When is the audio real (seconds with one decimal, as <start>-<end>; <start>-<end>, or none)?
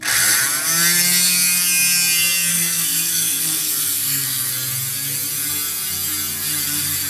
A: 0.0-2.5; 4.5-7.1